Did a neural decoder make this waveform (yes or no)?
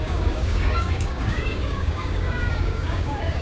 yes